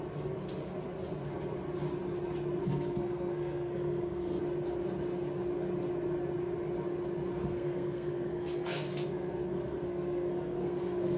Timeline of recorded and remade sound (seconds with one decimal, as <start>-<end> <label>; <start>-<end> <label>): 0.0-2.6 recorded; 2.6-4.4 remade; 4.4-7.4 recorded; 7.4-11.2 remade